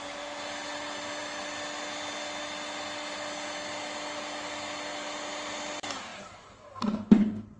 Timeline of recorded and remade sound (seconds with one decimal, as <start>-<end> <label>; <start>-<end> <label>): 0.0-7.6 recorded